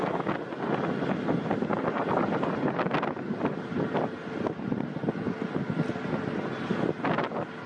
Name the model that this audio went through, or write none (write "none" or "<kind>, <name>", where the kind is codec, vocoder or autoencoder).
none